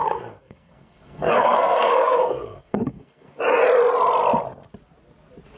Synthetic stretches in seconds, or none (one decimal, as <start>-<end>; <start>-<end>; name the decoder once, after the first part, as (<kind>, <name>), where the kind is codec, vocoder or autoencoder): 0.0-3.4 (codec, SNAC)